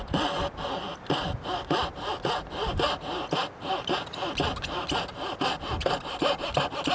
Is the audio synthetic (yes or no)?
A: no